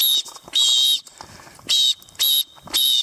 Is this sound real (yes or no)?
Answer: yes